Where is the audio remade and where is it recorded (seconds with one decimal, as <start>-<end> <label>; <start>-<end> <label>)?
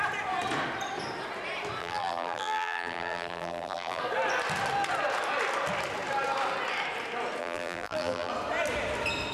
0.0-1.8 recorded; 1.8-4.0 remade; 4.0-7.4 recorded; 7.4-8.3 remade; 8.3-9.3 recorded